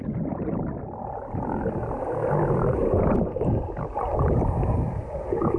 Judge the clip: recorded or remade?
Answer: recorded